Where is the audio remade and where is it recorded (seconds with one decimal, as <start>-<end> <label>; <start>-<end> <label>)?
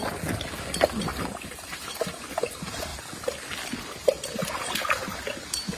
0.0-4.4 recorded; 4.4-5.8 remade